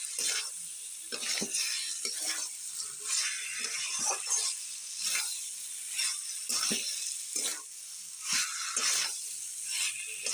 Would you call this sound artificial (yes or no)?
no